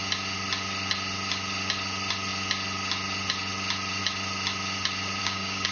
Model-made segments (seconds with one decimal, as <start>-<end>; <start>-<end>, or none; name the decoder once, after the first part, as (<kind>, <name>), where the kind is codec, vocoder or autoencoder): 5.2-5.7 (codec, DAC)